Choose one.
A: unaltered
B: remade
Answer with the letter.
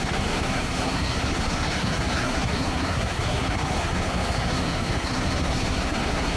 B